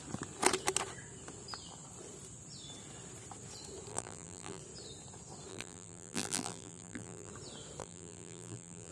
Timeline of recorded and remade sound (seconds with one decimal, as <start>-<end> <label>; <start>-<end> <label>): 0.0-3.9 recorded; 3.9-4.6 remade; 4.6-5.5 recorded; 5.5-7.3 remade; 7.3-7.8 recorded; 7.8-8.9 remade